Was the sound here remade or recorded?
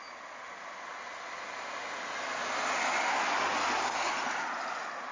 recorded